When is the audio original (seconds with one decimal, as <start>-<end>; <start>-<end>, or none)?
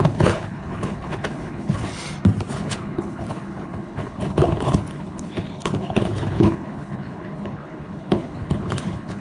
1.9-2.5